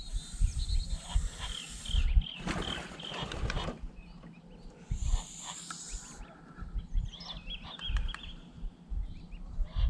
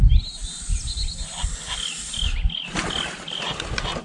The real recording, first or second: second